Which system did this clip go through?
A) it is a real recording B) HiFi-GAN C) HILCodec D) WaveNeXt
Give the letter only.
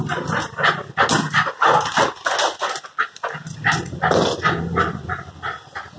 A